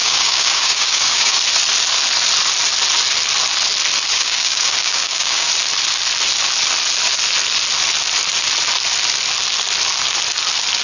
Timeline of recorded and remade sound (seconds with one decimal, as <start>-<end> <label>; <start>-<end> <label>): 0.0-1.4 remade; 1.4-4.1 recorded; 4.1-5.5 remade; 5.5-10.8 recorded